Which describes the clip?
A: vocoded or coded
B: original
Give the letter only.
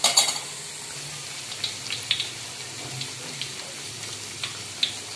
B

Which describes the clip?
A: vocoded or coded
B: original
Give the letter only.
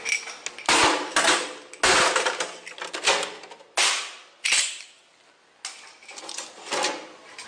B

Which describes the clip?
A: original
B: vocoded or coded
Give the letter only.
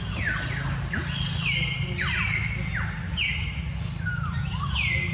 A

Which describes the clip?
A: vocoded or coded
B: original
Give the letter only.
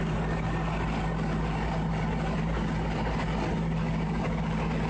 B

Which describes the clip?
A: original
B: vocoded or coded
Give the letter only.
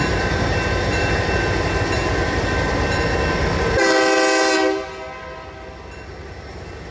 A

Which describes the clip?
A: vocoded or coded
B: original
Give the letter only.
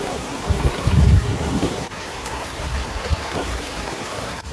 A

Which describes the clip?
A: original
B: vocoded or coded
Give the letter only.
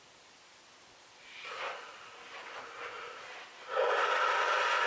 A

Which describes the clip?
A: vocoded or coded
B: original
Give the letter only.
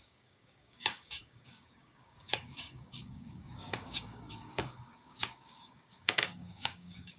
A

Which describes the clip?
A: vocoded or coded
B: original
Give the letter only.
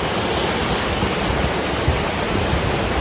B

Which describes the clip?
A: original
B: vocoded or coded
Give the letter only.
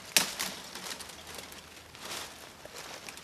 A